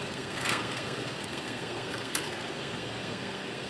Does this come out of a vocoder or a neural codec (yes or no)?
yes